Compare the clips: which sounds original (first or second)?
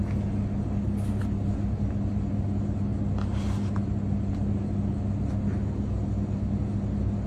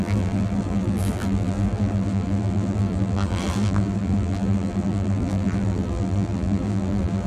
first